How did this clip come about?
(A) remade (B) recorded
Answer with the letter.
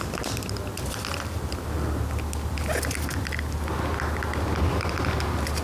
B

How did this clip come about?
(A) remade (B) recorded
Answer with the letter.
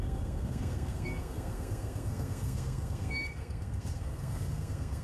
A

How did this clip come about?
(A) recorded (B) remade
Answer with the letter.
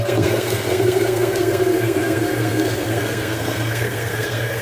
B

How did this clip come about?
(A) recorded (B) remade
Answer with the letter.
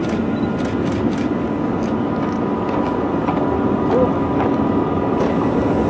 A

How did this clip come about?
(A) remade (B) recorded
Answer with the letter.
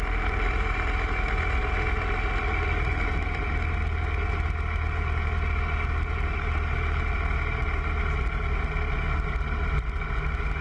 B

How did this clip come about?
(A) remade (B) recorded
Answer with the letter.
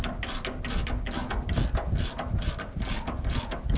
B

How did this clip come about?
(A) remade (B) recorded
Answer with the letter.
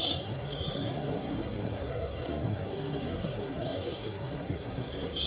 A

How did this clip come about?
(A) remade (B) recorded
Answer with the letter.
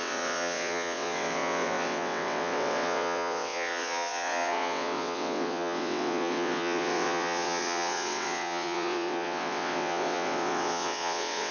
A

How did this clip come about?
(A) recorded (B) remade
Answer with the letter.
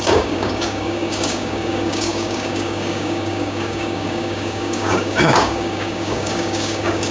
B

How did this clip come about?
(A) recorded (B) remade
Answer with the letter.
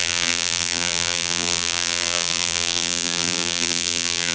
B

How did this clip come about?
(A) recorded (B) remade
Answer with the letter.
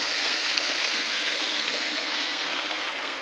B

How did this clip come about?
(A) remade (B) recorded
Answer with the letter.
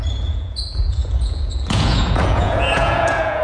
A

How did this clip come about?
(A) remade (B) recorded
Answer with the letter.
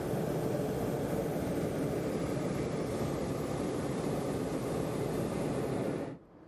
B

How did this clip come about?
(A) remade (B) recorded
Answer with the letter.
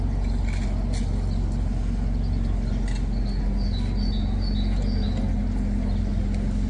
B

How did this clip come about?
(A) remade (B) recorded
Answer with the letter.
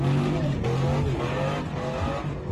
B